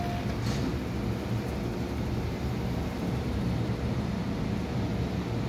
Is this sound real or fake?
real